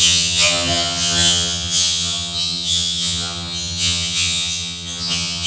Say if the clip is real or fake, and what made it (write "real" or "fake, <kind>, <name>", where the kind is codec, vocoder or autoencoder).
fake, vocoder, HiFi-GAN